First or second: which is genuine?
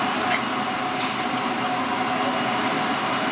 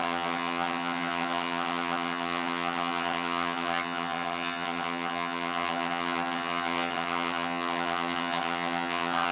first